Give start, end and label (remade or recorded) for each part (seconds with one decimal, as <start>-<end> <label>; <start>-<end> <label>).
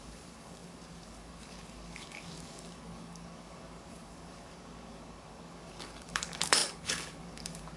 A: 0.0-7.8 remade